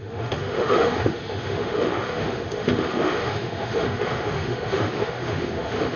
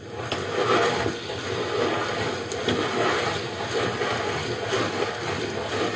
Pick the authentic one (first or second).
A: second